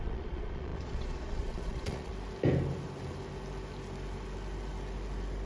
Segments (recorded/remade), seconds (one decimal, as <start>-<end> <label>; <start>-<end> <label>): 0.0-2.1 remade; 2.1-5.5 recorded